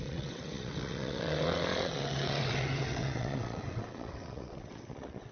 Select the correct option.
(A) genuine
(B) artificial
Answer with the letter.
B